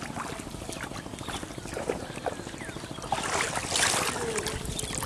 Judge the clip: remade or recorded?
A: recorded